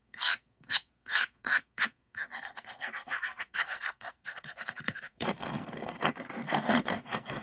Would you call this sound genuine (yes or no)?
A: no